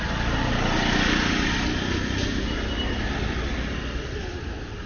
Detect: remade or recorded recorded